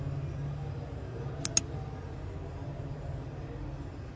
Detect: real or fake real